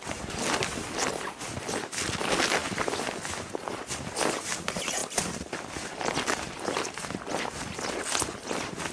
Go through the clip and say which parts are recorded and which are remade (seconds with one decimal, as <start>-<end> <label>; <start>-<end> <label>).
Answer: 0.0-8.9 recorded